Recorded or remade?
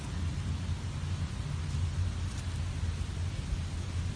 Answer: recorded